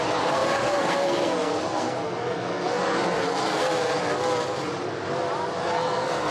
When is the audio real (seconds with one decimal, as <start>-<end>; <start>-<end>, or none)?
4.0-5.6